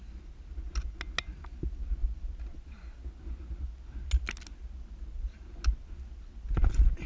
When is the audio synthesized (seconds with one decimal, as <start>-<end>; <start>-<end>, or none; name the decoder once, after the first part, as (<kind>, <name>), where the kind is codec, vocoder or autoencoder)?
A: none